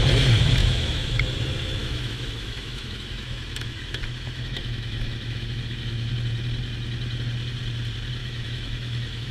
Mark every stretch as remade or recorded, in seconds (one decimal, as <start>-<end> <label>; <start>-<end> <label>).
0.0-0.6 recorded; 0.6-1.2 remade; 1.2-1.8 recorded; 1.8-6.1 remade; 6.1-8.2 recorded; 8.2-9.3 remade